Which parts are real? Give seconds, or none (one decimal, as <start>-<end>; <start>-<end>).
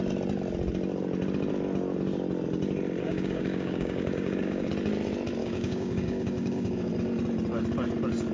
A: 0.0-3.0; 4.7-5.4; 6.9-8.3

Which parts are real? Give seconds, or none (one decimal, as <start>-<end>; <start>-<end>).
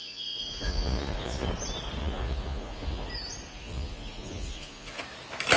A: 1.5-2.0; 3.1-3.5; 5.0-5.6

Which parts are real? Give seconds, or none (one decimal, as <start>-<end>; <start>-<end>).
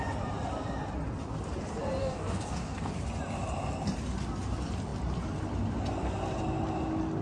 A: 0.0-2.0; 2.9-7.2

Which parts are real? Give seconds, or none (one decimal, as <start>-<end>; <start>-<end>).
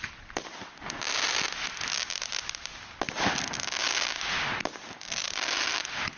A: 0.0-5.7